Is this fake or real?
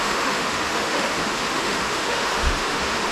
fake